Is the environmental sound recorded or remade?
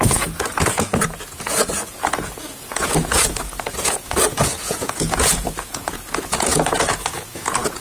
remade